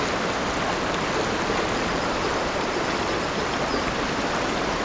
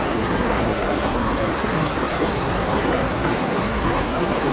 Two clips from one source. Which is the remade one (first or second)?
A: second